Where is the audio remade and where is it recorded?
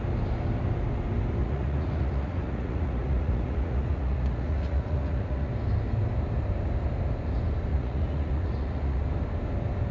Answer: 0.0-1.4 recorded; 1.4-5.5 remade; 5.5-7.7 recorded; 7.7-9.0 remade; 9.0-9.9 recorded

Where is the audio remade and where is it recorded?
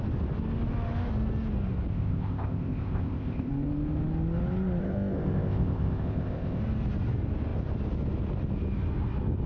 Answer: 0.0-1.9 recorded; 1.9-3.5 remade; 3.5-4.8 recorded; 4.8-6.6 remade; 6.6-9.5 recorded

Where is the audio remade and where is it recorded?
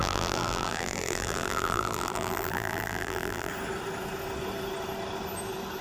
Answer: 0.0-3.5 remade; 3.5-5.8 recorded